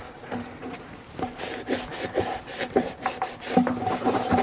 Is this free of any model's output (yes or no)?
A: yes